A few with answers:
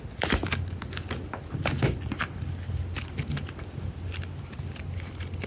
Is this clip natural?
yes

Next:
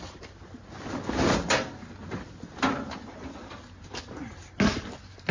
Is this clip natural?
yes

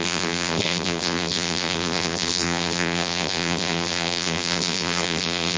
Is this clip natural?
no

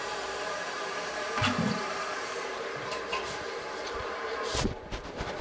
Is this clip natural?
no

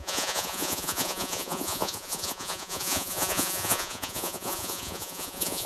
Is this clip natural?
no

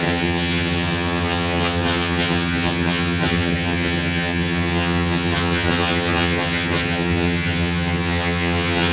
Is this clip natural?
no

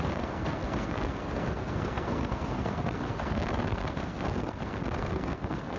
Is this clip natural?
no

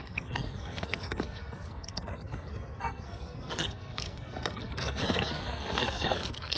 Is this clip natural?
no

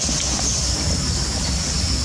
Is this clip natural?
yes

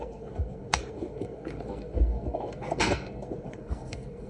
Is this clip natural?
no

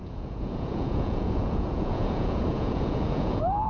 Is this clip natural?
no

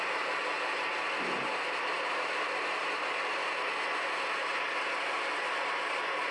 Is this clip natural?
yes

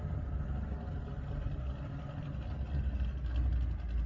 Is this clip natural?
yes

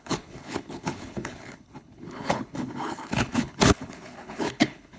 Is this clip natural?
no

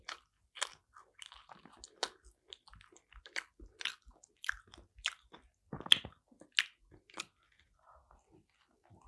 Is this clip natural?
yes